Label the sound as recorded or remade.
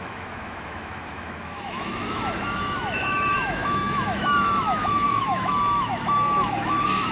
remade